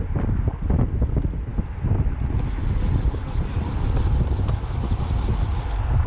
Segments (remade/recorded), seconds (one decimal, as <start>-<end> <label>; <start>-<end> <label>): 0.0-6.1 remade